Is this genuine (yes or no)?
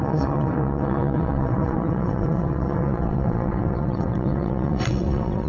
no